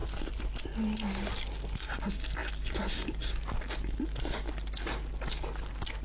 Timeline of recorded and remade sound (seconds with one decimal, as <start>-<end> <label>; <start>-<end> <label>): 0.0-6.0 recorded